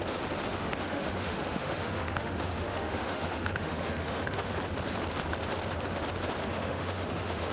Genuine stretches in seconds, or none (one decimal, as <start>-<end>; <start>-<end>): 0.0-0.5; 4.5-6.4